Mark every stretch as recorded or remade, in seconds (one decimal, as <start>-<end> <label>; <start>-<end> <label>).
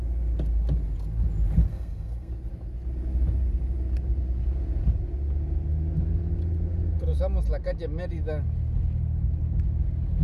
0.0-1.7 recorded; 1.7-2.3 remade; 2.3-10.2 recorded